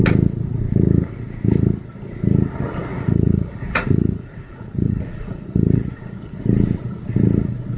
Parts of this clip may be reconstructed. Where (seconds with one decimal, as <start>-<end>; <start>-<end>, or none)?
2.9-6.4